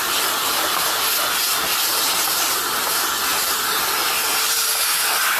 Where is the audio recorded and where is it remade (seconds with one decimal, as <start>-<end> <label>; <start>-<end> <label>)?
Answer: 0.0-1.5 recorded; 1.5-2.6 remade; 2.6-4.3 recorded; 4.3-4.8 remade; 4.8-5.4 recorded